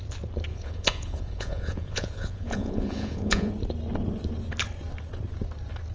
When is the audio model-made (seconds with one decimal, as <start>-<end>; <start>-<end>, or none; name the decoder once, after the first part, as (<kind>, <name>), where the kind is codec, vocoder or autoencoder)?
0.5-3.5 (vocoder, Vocos)